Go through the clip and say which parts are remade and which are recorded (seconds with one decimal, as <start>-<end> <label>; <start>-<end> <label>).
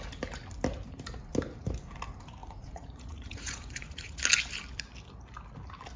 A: 0.0-2.4 recorded; 2.4-4.2 remade; 4.2-6.0 recorded